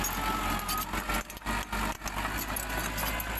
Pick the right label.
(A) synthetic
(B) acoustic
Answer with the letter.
B